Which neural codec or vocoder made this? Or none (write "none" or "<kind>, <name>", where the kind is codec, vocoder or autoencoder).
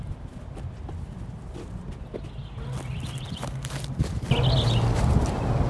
none